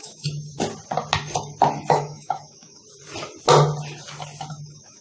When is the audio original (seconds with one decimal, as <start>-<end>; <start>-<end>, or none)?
0.5-1.9; 2.8-4.5